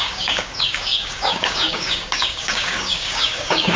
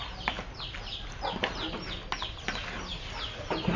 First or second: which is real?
second